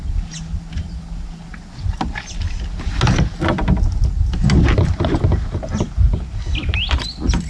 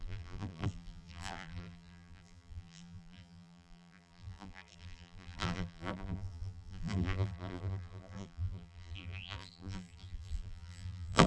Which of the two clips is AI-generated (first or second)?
second